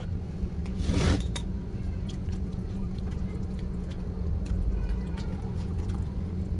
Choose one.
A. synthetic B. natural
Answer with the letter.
A